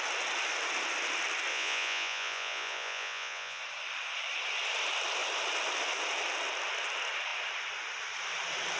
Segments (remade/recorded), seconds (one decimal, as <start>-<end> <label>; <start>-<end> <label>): 0.0-1.5 recorded; 1.5-3.6 remade; 3.6-8.8 recorded